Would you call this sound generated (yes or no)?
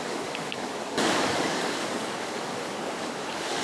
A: yes